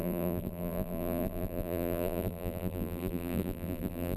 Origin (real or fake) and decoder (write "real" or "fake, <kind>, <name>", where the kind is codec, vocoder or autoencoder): fake, vocoder, BigVGAN v2